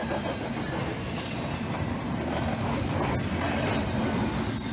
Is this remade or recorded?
recorded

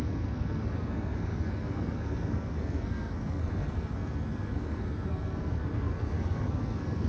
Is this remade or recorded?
remade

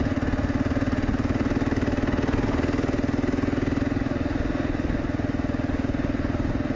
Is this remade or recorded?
recorded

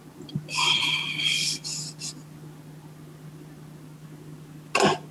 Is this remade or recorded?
recorded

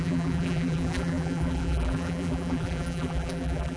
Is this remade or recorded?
remade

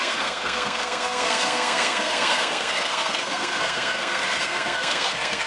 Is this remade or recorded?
remade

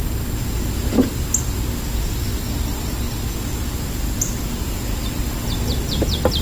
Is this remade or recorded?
recorded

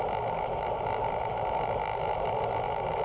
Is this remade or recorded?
recorded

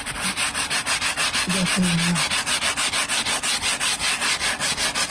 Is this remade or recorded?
recorded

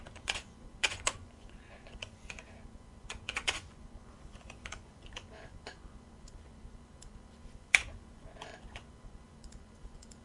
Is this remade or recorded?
remade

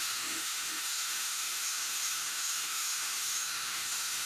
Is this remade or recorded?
remade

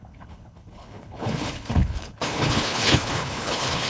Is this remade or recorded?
remade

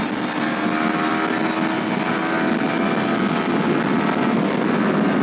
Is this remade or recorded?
recorded